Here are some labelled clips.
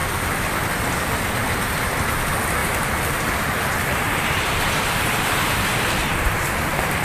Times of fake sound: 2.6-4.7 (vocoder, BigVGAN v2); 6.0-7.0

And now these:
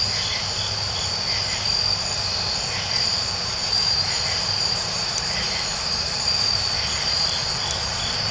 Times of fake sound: 3.1-8.3 (vocoder, BigVGAN v2)

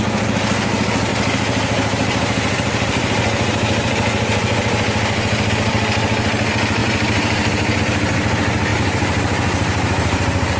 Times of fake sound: 1.1-5.5 (vocoder, BigVGAN v2); 6.8-7.8; 8.7-10.6

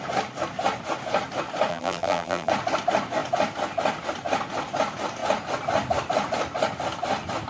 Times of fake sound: 1.7-2.5 (vocoder, BigVGAN v2)

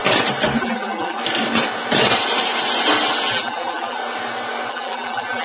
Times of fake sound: 0.6-1.2 (vocoder, BigVGAN v2); 3.3-4.0; 4.7-5.4

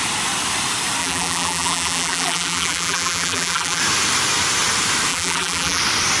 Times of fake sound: 1.0-3.8 (vocoder, BigVGAN v2); 5.1-5.8

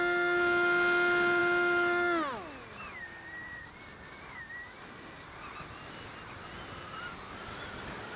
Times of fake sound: none

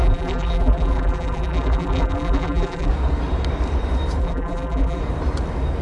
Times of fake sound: 0.0-2.9 (vocoder, BigVGAN v2); 4.2-5.0